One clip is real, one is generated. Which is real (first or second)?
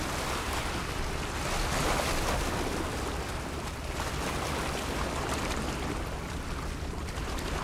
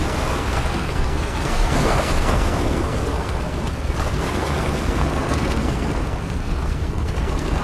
first